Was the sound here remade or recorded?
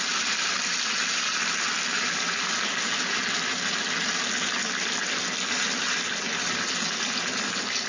recorded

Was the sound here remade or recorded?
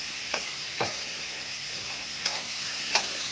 remade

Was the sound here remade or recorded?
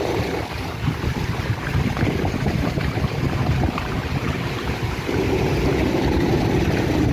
remade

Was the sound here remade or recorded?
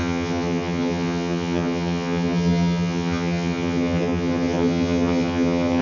remade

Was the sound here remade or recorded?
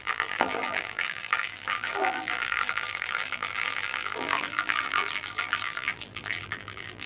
remade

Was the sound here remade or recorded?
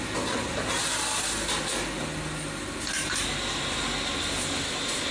recorded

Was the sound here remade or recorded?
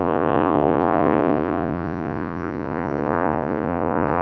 remade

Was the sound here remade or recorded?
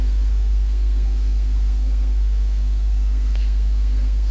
remade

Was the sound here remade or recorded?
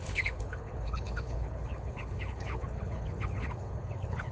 remade